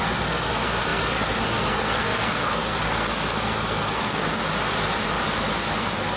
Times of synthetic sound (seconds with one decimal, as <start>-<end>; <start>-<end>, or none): 0.0-4.4; 5.7-6.2

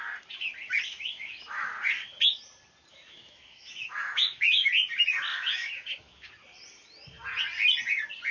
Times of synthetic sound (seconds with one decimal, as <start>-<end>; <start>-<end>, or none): 0.9-1.7; 2.9-4.7; 5.3-6.3

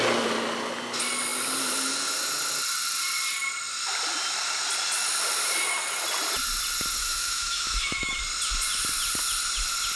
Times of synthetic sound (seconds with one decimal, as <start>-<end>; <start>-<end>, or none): 7.0-8.2

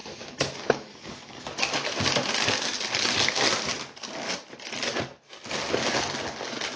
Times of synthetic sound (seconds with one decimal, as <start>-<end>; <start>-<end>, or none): 0.0-1.4

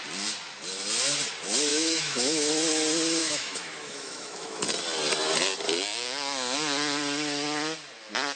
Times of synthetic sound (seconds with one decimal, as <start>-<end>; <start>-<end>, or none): 1.7-2.5; 3.2-4.6